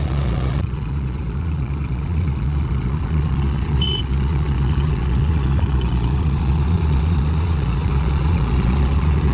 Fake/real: fake